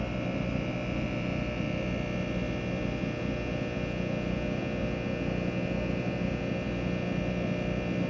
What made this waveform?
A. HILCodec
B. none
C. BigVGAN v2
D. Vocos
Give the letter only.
B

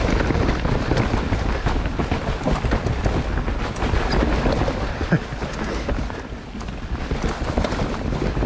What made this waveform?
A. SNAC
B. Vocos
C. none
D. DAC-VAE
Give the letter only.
C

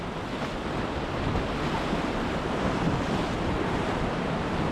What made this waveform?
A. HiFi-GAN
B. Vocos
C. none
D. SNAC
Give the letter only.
C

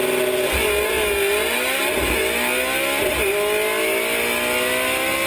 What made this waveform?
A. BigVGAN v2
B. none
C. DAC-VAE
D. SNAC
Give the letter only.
B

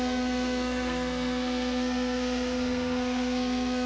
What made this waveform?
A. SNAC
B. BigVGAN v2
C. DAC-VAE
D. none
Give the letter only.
A